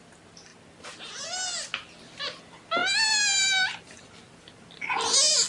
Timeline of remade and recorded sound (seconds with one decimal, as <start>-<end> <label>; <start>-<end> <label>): 0.0-5.5 recorded